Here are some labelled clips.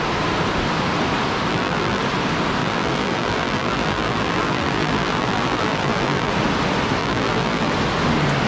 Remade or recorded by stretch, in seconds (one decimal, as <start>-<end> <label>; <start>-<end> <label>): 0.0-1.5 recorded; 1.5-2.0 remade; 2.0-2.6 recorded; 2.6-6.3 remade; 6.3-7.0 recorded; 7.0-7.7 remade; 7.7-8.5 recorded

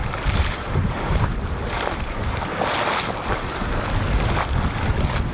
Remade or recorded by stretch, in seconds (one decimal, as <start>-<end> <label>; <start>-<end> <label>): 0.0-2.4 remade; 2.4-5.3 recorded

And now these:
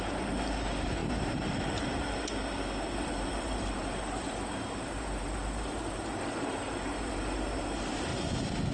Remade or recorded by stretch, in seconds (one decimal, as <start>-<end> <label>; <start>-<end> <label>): 0.0-8.1 remade; 8.1-8.7 recorded